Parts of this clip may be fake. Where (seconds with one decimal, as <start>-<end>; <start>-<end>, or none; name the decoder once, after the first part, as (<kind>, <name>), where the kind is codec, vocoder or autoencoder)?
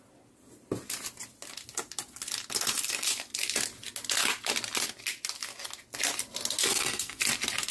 6.6-7.2 (codec, SNAC)